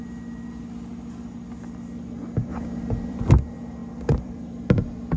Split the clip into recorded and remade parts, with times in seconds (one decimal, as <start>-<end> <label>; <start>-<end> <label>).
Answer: 0.0-2.5 recorded; 2.5-3.3 remade; 3.3-3.8 recorded; 3.8-4.4 remade; 4.4-5.2 recorded

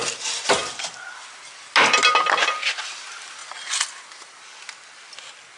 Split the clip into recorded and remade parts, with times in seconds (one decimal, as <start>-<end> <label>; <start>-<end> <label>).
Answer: 0.0-0.6 remade; 0.6-2.4 recorded; 2.4-3.4 remade; 3.4-5.6 recorded

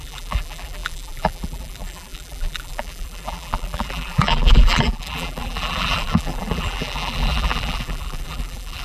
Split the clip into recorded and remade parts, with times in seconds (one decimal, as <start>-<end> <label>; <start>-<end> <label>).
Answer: 0.0-8.8 remade

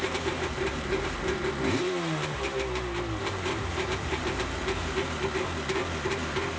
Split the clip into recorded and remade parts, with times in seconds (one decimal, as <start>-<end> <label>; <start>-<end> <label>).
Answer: 0.0-1.4 remade; 1.4-3.2 recorded; 3.2-4.6 remade; 4.6-6.6 recorded

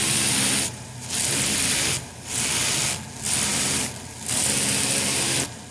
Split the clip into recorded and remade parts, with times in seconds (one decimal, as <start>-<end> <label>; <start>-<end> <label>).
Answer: 0.0-2.5 remade; 2.5-3.5 recorded; 3.5-4.4 remade; 4.4-5.7 recorded